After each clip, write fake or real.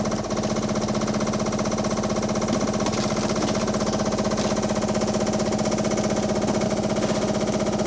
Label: real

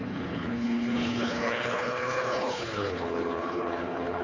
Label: fake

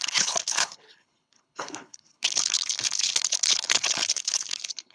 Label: fake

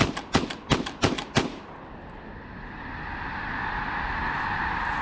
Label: real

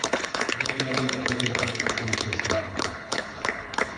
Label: fake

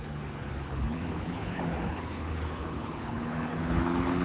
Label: fake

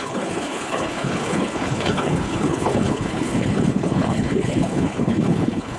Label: fake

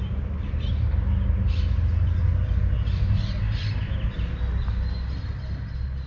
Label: real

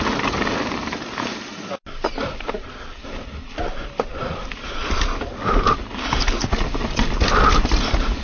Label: real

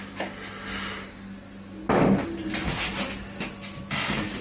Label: real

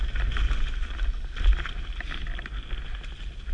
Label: real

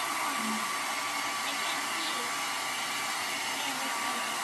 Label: real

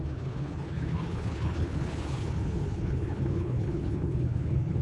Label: fake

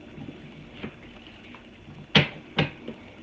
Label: real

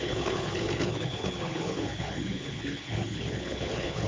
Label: fake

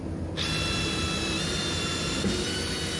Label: real